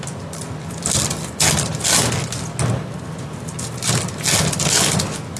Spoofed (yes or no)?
no